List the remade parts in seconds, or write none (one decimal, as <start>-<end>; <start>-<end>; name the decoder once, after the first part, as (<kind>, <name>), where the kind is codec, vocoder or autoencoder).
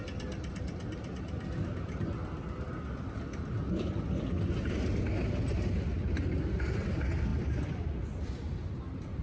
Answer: none